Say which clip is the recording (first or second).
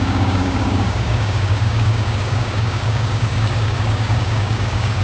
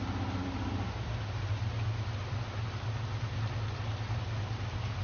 second